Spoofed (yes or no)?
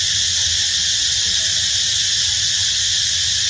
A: no